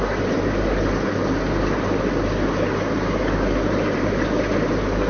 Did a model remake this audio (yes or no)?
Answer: no